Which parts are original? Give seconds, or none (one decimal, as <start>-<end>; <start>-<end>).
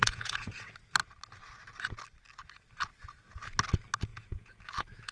0.5-4.1; 4.6-5.1